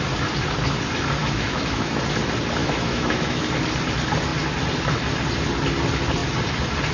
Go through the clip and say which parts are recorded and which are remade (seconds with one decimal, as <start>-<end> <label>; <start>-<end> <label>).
0.0-1.2 recorded; 1.2-2.0 remade; 2.0-2.6 recorded; 2.6-3.4 remade; 3.4-6.9 recorded